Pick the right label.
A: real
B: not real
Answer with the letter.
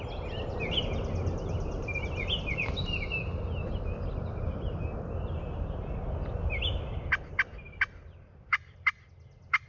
A